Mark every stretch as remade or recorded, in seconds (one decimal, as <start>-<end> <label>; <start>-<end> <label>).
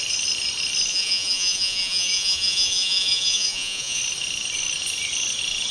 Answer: 0.0-0.9 recorded; 0.9-4.0 remade; 4.0-5.7 recorded